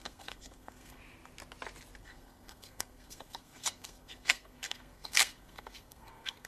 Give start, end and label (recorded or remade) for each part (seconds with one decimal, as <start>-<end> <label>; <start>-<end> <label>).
0.0-1.0 remade; 1.0-2.0 recorded; 2.0-6.5 remade